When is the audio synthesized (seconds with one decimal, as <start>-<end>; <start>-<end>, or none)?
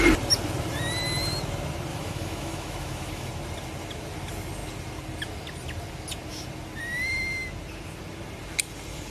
1.9-3.3